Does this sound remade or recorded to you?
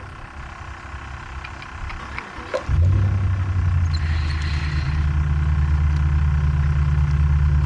recorded